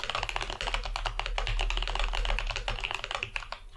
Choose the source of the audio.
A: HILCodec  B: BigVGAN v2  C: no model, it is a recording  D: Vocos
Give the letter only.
C